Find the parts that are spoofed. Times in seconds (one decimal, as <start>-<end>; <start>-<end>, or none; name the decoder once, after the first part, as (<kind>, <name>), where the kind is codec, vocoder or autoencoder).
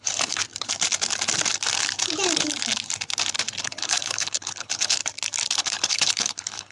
0.0-0.4 (codec, HILCodec); 3.6-5.0; 5.6-6.7